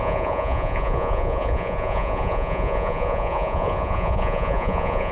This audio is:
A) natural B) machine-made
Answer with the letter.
B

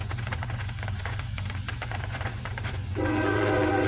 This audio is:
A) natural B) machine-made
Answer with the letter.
B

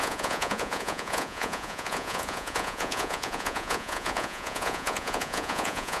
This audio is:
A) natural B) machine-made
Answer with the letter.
B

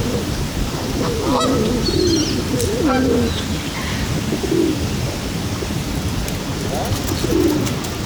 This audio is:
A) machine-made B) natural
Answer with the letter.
B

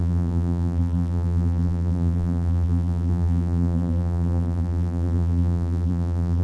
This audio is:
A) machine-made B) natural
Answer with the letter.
A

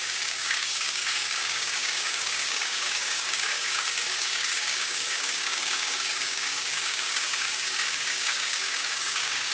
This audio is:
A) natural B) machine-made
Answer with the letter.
B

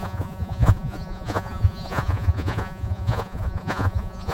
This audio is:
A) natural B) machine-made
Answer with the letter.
B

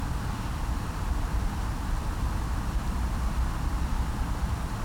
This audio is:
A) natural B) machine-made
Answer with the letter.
A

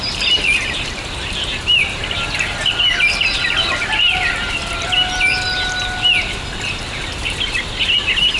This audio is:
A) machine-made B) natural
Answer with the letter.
B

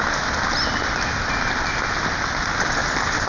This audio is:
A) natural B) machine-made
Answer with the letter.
A